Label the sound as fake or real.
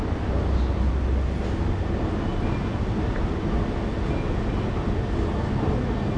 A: real